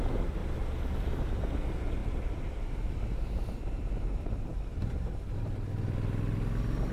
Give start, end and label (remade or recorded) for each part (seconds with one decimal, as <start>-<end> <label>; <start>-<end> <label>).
0.0-2.0 recorded; 2.0-2.9 remade; 2.9-6.9 recorded

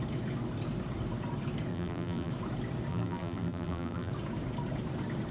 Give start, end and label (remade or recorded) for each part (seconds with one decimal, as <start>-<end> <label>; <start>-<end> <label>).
0.0-1.7 recorded; 1.7-2.3 remade; 2.3-2.9 recorded; 2.9-4.1 remade; 4.1-5.3 recorded

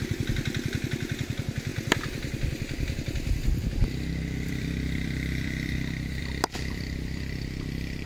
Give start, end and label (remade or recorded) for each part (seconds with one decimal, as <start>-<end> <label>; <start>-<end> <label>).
0.0-8.1 remade

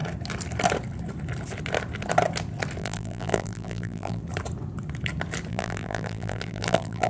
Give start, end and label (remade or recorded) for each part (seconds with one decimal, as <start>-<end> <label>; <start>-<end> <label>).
0.0-2.8 recorded; 2.8-4.2 remade; 4.2-5.5 recorded; 5.5-7.1 remade

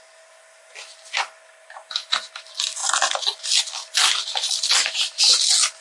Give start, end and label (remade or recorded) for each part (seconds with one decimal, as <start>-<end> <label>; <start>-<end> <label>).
0.0-5.8 recorded

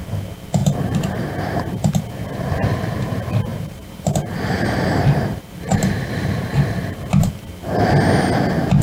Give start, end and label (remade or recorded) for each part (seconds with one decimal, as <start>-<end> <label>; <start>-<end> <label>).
0.0-0.6 recorded; 0.6-2.0 remade; 2.0-3.5 recorded; 3.5-7.1 remade; 7.1-8.8 recorded